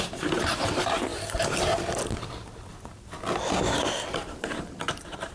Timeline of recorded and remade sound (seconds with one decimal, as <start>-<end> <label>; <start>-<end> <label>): 0.0-1.1 remade; 1.1-4.3 recorded; 4.3-5.3 remade

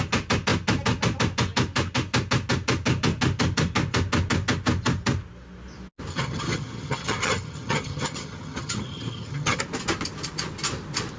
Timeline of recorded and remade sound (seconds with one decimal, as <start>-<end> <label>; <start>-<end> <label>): 0.0-6.1 recorded; 6.1-9.6 remade; 9.6-11.2 recorded

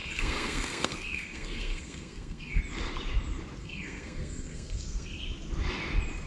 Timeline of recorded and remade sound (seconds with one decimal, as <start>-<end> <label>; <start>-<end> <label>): 0.0-2.6 remade; 2.6-3.6 recorded; 3.6-5.2 remade; 5.2-6.3 recorded